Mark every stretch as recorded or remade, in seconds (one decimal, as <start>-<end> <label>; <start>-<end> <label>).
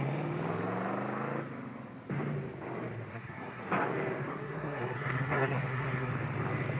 0.0-3.1 recorded; 3.1-3.7 remade; 3.7-4.3 recorded; 4.3-6.1 remade; 6.1-6.8 recorded